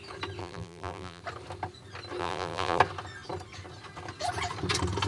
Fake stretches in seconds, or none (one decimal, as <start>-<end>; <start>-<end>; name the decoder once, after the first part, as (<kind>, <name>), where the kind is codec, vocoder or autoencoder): 0.4-1.2 (vocoder, BigVGAN v2); 2.2-2.8